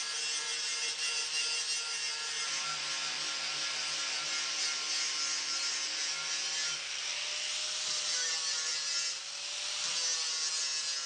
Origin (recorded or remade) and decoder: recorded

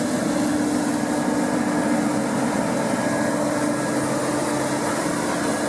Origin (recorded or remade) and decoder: recorded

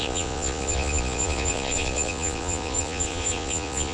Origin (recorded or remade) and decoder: remade, vocoder, Vocos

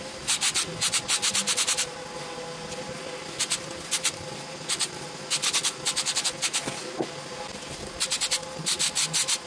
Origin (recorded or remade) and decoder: recorded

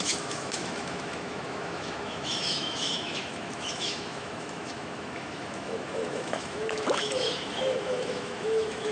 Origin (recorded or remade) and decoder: remade, autoencoder, DAC-VAE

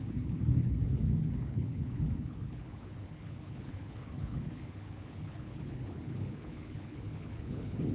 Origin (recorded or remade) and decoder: remade, codec, HILCodec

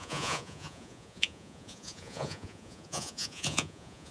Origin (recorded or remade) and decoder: remade, vocoder, Vocos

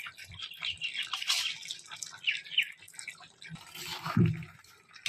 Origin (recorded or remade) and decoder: recorded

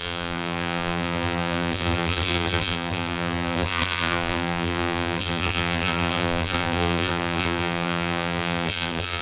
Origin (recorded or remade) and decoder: remade, vocoder, BigVGAN v2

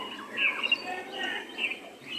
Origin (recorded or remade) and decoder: recorded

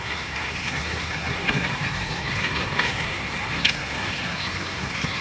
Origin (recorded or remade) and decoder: remade, codec, SNAC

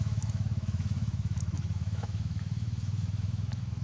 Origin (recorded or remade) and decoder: remade, autoencoder, DAC-VAE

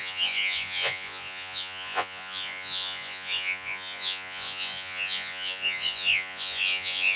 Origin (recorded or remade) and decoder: remade, vocoder, Vocos